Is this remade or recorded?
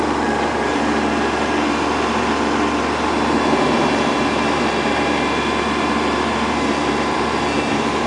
remade